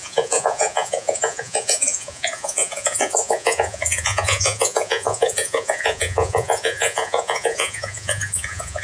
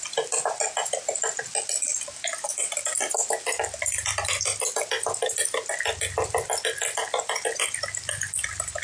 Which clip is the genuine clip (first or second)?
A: second